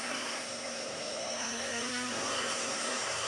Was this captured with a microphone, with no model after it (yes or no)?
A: no